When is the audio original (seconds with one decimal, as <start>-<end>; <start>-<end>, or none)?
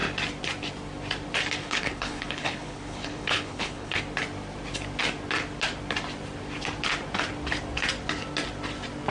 0.0-1.6; 4.0-9.1